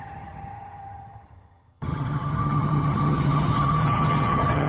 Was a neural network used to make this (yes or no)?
yes